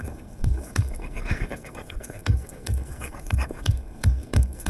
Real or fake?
fake